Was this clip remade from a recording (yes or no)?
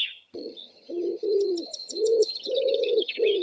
yes